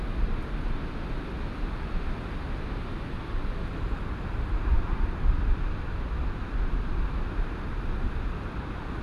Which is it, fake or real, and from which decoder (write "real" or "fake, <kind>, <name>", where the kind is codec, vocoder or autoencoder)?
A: real